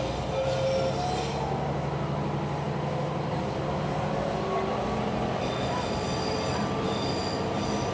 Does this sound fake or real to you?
real